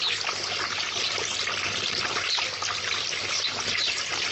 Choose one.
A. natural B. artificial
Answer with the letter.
A